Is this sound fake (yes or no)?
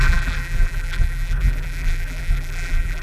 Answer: yes